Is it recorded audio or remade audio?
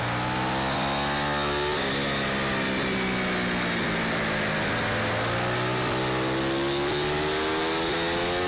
recorded